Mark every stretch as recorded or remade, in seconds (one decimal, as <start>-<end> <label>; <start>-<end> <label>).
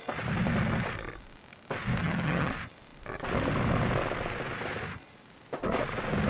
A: 0.0-2.0 recorded; 2.0-2.5 remade; 2.5-6.3 recorded